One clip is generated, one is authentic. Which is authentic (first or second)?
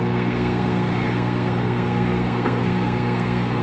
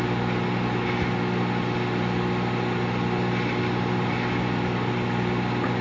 second